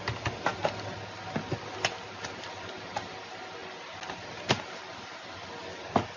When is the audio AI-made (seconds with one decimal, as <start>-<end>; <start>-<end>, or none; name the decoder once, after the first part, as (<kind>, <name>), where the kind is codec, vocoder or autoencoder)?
none